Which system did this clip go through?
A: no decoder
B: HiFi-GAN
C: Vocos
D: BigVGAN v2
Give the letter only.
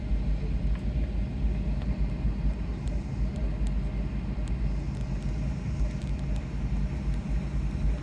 A